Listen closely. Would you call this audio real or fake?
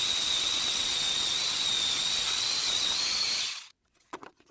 fake